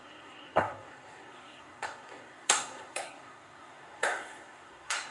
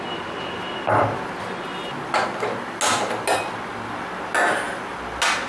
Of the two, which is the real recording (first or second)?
second